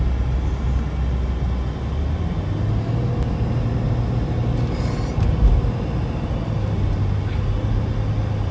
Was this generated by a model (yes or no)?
no